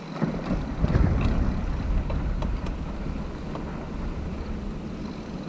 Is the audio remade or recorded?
recorded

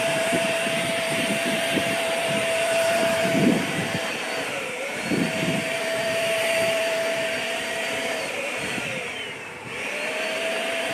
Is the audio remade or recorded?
remade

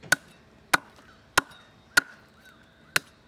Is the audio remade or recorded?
recorded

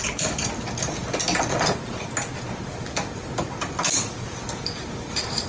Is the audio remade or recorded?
recorded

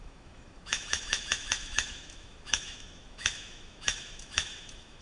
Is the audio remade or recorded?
remade